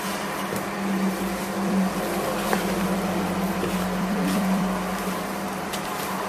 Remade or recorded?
remade